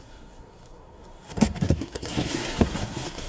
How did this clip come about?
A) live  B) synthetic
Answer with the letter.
B